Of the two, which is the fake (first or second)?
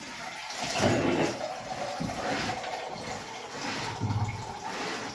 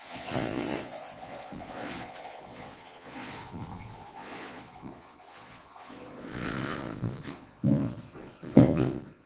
second